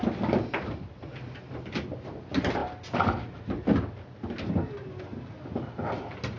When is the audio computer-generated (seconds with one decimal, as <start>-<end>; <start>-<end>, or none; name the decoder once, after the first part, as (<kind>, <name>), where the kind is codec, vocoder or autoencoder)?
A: none